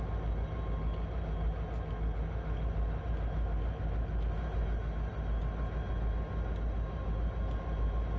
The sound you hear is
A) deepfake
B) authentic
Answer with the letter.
B